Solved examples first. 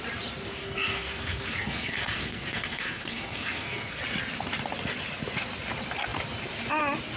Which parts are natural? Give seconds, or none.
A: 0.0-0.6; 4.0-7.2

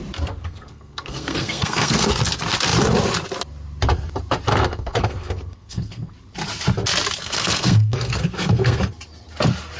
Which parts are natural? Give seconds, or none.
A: 0.0-0.4; 2.1-4.5; 6.1-7.2; 8.8-9.8

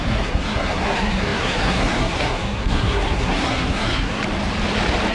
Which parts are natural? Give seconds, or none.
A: 4.2-5.1

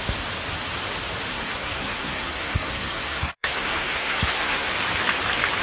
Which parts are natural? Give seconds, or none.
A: 0.0-1.3; 4.7-5.6

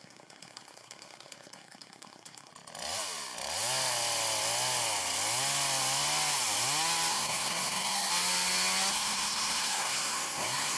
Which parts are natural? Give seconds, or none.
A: 2.5-7.1; 8.1-8.9

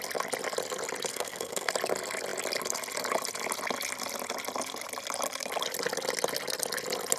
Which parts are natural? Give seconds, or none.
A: 0.0-1.1; 1.7-7.2